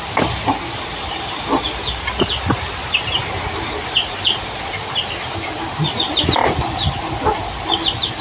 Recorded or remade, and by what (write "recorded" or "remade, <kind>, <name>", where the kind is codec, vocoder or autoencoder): remade, vocoder, BigVGAN v2